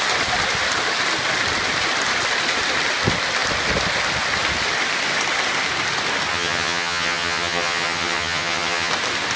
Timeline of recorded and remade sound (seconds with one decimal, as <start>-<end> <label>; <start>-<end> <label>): 0.0-6.3 recorded; 6.3-8.9 remade; 8.9-9.4 recorded